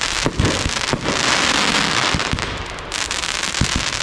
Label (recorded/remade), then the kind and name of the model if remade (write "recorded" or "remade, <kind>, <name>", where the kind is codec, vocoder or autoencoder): recorded